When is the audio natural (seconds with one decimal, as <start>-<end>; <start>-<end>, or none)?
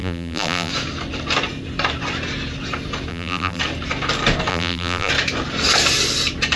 0.7-3.1; 3.6-4.5; 5.1-6.6